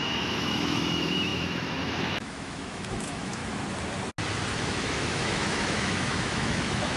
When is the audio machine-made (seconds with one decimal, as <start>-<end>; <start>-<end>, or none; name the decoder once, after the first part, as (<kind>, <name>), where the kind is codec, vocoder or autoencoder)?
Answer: 0.0-3.4 (autoencoder, DAC-VAE); 4.6-7.0